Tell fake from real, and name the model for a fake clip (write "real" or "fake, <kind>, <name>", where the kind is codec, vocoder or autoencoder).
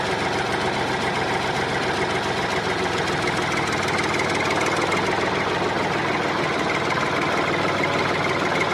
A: real